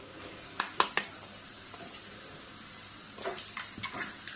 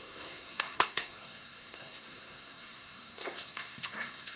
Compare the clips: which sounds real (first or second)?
first